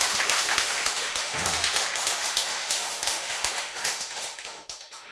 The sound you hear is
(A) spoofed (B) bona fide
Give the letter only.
A